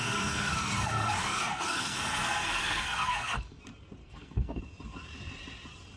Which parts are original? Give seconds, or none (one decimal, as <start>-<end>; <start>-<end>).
3.6-4.0; 4.6-6.0